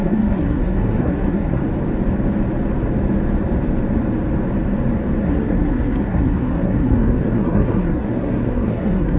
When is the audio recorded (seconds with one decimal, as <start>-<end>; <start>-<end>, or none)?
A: 1.6-5.2